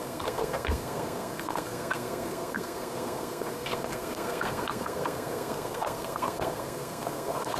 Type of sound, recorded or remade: remade